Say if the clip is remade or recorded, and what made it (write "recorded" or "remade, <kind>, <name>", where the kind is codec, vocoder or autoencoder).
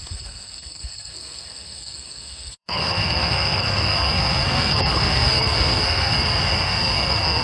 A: remade, codec, SNAC